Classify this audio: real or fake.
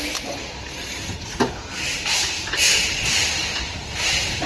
fake